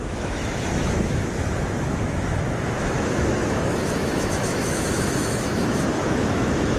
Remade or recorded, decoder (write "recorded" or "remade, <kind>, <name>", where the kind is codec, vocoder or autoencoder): remade, autoencoder, DAC-VAE